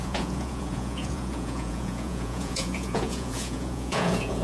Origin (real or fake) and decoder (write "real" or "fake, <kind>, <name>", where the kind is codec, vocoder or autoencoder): fake, vocoder, Vocos